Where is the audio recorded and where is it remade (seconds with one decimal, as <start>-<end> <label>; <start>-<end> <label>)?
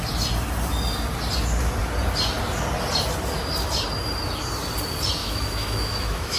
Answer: 0.0-5.2 recorded; 5.2-6.4 remade